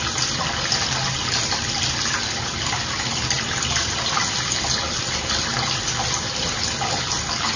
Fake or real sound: real